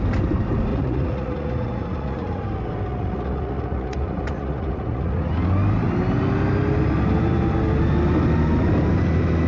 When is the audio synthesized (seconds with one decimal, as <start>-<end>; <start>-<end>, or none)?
0.7-2.4; 2.9-5.3